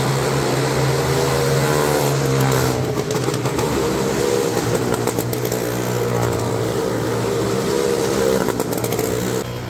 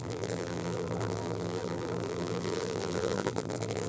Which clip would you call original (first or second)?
first